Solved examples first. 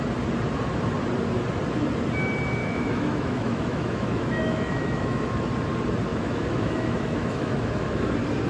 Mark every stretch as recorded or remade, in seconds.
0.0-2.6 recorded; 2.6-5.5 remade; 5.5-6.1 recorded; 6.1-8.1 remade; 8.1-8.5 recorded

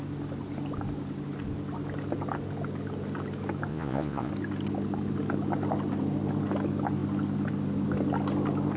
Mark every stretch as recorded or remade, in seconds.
0.0-3.7 recorded; 3.7-4.3 remade; 4.3-8.8 recorded

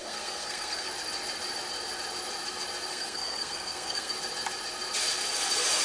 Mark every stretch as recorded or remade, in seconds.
0.0-0.9 remade; 0.9-2.9 recorded; 2.9-4.1 remade; 4.1-5.8 recorded